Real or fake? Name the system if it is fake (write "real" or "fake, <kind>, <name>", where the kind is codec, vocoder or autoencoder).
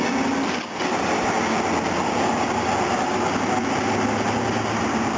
real